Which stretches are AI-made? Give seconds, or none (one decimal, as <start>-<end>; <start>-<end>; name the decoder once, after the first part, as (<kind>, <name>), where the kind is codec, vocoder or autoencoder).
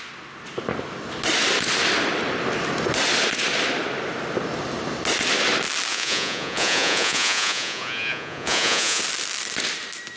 5.9-9.0 (vocoder, Vocos)